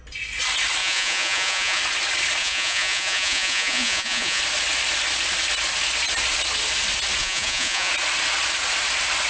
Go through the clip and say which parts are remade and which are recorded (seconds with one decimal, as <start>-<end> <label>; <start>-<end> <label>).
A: 0.0-0.8 recorded; 0.8-1.8 remade; 1.8-2.4 recorded; 2.4-4.4 remade; 4.4-7.2 recorded; 7.2-7.9 remade; 7.9-9.3 recorded